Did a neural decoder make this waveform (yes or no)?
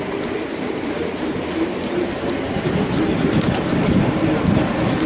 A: yes